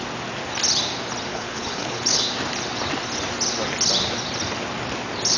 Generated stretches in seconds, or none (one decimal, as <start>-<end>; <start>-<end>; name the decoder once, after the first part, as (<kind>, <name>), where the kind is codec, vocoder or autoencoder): 1.3-2.2 (codec, HILCodec)